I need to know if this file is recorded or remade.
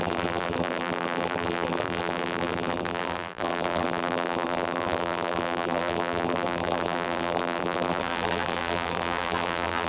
remade